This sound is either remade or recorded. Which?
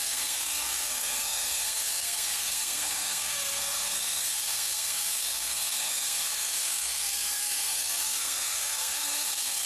remade